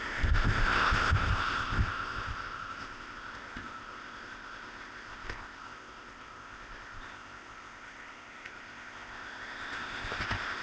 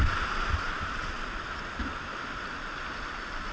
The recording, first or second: second